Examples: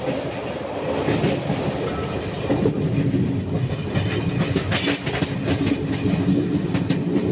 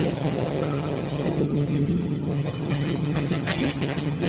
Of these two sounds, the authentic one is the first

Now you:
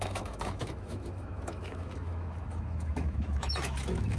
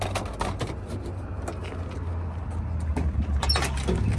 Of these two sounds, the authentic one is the second